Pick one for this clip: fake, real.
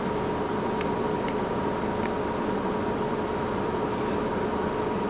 real